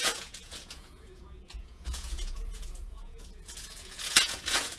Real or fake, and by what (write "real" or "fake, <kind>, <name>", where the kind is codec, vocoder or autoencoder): fake, vocoder, Vocos